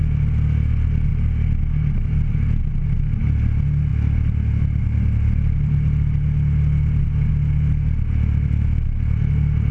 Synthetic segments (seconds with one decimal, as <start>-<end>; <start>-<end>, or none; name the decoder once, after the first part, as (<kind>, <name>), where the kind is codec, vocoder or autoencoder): none